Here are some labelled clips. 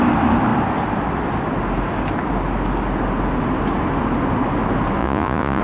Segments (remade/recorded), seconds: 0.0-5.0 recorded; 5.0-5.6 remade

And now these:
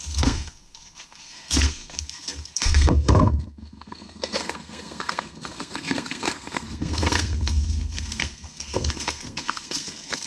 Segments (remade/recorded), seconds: 0.0-10.3 remade

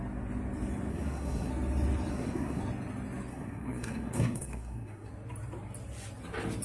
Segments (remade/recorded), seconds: 0.0-0.9 recorded; 0.9-1.5 remade; 1.5-2.1 recorded; 2.1-2.6 remade; 2.6-3.3 recorded; 3.3-5.1 remade; 5.1-6.6 recorded

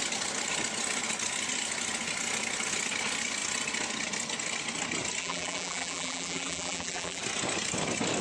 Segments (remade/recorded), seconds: 0.0-5.2 recorded; 5.2-7.2 remade; 7.2-8.2 recorded

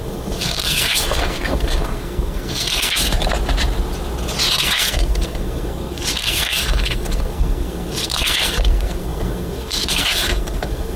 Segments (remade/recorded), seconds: 0.0-3.2 remade; 3.2-4.6 recorded; 4.6-11.0 remade

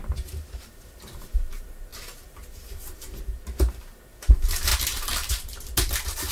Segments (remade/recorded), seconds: 0.0-6.3 remade

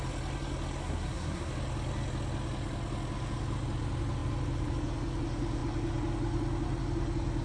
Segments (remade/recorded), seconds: 0.0-0.8 recorded; 0.8-1.5 remade; 1.5-7.4 recorded

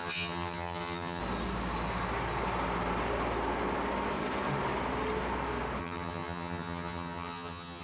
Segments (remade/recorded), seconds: 0.0-1.2 remade; 1.2-5.8 recorded; 5.8-7.8 remade